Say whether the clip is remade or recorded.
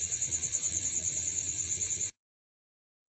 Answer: remade